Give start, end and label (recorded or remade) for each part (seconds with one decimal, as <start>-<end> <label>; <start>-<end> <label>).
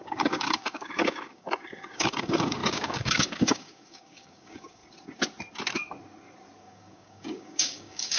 0.0-4.8 remade; 4.8-6.6 recorded; 6.6-8.2 remade